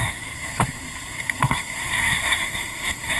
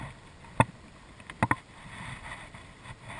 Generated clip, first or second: first